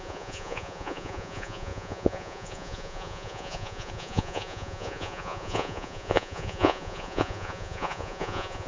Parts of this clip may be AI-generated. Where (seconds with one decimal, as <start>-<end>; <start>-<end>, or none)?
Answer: 0.0-8.7